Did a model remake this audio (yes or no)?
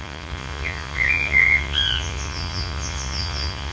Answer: yes